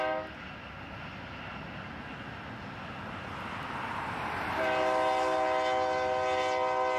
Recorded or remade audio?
recorded